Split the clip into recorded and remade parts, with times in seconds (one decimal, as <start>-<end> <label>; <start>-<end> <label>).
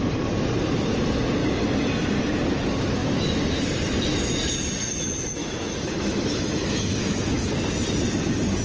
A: 0.0-3.0 recorded; 3.0-3.5 remade; 3.5-5.4 recorded; 5.4-7.5 remade; 7.5-8.6 recorded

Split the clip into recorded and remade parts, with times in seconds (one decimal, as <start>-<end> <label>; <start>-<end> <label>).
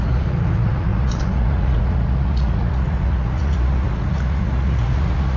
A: 0.0-5.4 remade